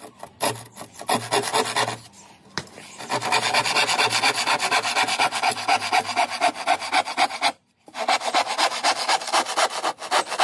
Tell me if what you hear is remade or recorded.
recorded